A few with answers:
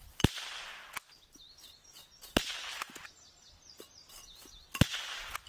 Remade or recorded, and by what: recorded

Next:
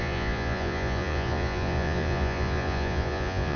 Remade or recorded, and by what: remade, vocoder, Vocos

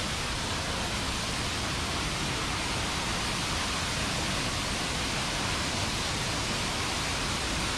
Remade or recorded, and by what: recorded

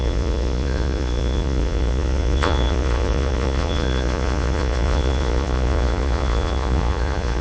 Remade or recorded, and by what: remade, vocoder, Vocos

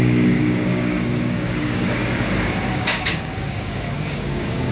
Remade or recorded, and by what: remade, codec, DAC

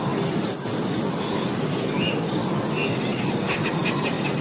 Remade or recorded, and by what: recorded